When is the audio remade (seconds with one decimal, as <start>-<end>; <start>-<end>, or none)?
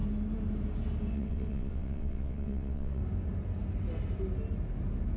1.1-3.0